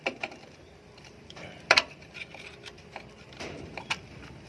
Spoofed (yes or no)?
yes